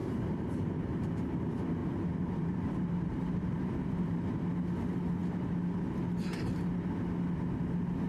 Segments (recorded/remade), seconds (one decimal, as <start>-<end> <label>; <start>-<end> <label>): 0.0-1.4 remade; 1.4-1.8 recorded; 1.8-4.4 remade; 4.4-8.1 recorded